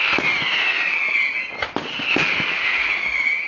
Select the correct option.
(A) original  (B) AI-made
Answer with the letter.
A